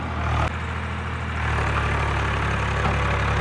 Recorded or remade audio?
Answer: recorded